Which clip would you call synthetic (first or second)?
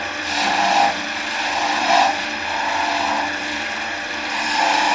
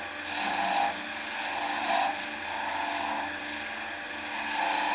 first